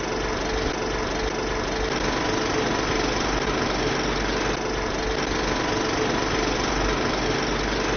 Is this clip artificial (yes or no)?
no